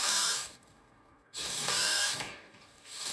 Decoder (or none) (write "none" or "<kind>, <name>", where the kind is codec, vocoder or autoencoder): codec, DAC